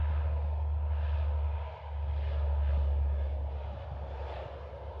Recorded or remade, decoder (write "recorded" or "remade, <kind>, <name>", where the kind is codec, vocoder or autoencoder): recorded